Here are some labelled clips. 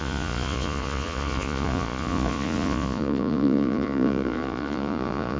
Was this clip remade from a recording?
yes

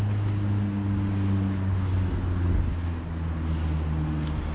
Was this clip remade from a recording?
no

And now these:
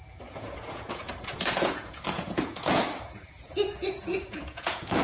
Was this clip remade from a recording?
yes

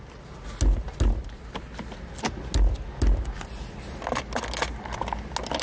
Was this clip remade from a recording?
no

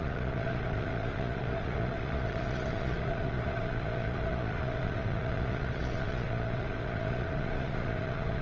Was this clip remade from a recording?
yes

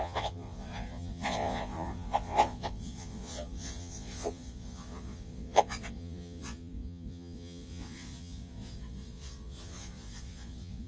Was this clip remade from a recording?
yes